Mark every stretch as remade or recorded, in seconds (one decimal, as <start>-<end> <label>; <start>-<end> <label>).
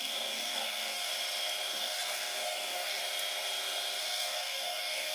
0.0-1.1 remade; 1.1-1.8 recorded; 1.8-3.0 remade; 3.0-4.0 recorded; 4.0-5.1 remade